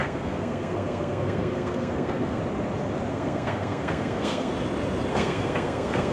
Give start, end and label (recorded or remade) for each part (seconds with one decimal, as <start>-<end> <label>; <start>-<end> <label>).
0.0-2.4 remade; 2.4-3.1 recorded; 3.1-4.5 remade; 4.5-5.1 recorded; 5.1-6.1 remade